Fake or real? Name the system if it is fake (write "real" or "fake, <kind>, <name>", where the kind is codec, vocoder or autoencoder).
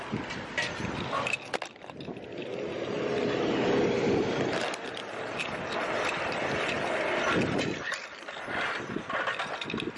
real